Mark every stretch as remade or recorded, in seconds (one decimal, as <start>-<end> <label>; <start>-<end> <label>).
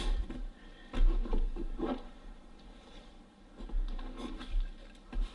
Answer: 0.0-1.3 recorded; 1.3-3.1 remade; 3.1-5.3 recorded